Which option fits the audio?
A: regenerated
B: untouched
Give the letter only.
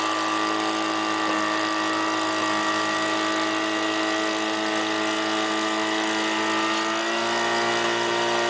B